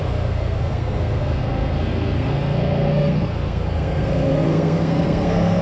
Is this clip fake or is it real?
fake